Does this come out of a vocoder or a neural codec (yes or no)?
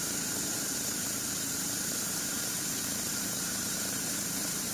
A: yes